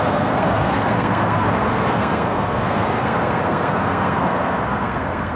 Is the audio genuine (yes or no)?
no